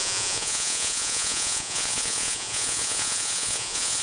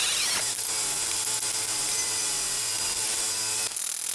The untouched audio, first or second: second